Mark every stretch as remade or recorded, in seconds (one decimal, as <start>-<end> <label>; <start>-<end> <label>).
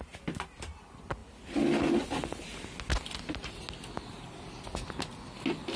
0.0-5.8 recorded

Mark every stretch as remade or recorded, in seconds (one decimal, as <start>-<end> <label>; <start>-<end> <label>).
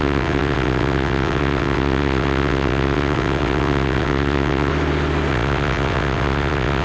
0.0-4.7 remade; 4.7-5.3 recorded; 5.3-6.8 remade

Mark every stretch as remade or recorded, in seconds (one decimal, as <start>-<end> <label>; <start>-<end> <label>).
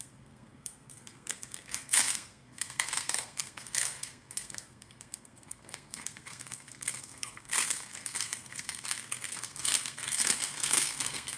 0.0-11.4 remade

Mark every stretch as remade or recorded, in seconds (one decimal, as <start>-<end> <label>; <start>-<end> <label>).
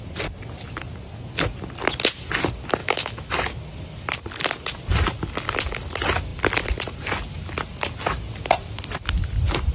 0.0-2.8 recorded; 2.8-3.3 remade; 3.3-9.7 recorded